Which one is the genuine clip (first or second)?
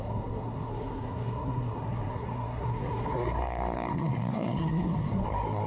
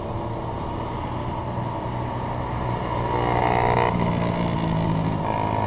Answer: second